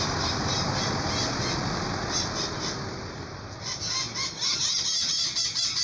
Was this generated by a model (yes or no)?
no